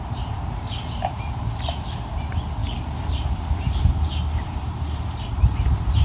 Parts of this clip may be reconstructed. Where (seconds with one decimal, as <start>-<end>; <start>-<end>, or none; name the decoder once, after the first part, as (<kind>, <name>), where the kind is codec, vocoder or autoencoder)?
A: 0.0-6.0 (vocoder, BigVGAN v2)